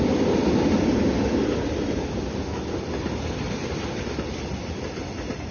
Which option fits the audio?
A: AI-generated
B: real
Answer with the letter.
B